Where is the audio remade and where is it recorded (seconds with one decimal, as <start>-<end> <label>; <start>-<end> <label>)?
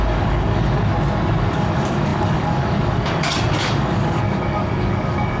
0.0-0.9 remade; 0.9-1.4 recorded; 1.4-5.4 remade